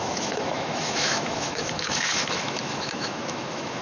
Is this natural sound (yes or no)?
no